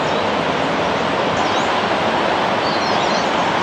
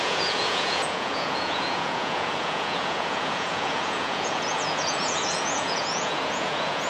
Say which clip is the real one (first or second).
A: first